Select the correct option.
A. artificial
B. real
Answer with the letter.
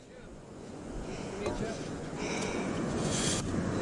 A